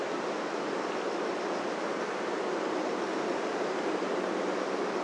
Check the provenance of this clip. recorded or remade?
recorded